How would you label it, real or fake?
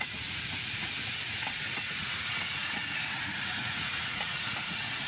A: fake